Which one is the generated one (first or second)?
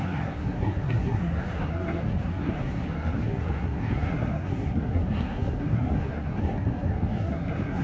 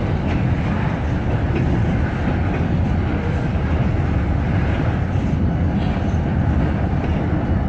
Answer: first